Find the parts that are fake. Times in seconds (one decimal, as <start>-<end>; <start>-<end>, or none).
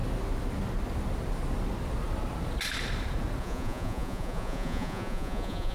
3.4-5.7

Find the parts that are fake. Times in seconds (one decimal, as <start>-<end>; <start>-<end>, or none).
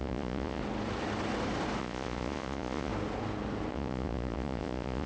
0.0-0.6; 1.8-2.9; 3.7-5.1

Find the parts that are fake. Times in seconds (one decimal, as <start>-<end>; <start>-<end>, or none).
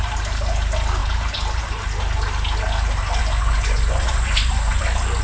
3.2-4.8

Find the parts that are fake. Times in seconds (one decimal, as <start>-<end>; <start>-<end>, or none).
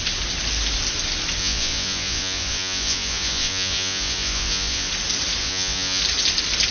1.4-4.9; 5.4-6.0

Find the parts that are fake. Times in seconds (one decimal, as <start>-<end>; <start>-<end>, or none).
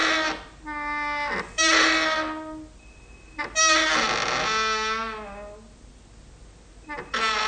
none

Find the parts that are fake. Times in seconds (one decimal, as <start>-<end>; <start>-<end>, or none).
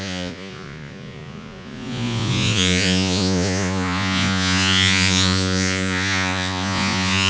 0.0-7.3